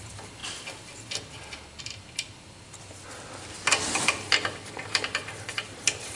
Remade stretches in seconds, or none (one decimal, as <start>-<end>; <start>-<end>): 0.0-0.4; 1.8-6.2

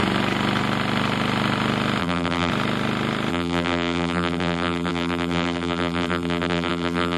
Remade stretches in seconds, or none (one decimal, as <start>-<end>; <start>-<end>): 2.0-2.5; 3.3-7.2

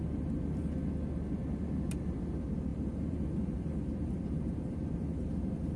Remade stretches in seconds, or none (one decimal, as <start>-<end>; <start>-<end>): 2.7-5.8

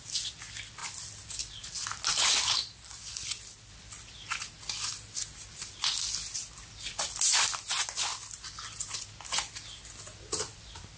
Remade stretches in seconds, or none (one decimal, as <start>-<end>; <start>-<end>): 0.8-1.6; 2.6-3.7

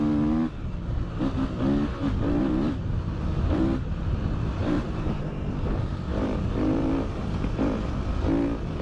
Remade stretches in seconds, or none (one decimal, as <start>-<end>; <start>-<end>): 2.0-4.1; 4.6-5.2; 6.1-7.9

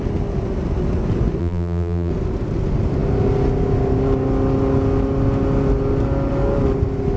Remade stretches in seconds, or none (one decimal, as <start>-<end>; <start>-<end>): 1.4-2.1